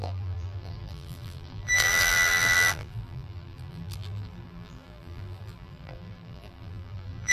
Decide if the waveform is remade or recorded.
remade